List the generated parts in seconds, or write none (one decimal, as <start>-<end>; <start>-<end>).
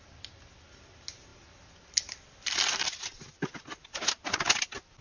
none